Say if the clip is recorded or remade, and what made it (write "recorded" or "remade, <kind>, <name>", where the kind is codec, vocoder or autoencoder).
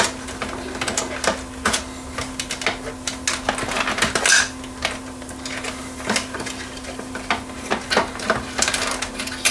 recorded